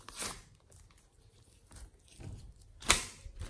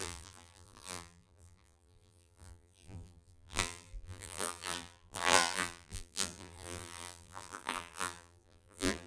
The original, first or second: first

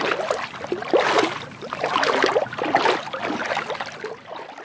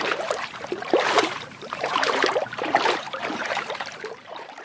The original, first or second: first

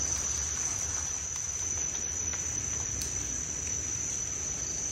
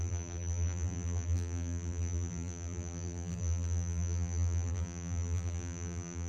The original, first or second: first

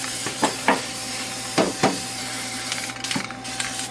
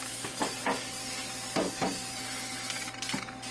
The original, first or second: second